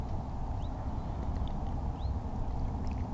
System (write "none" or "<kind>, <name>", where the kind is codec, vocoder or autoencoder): none